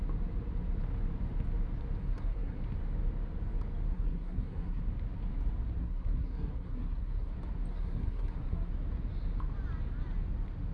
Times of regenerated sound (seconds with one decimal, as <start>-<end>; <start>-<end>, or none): 2.0-2.6; 3.9-4.8; 5.8-7.3; 7.7-8.7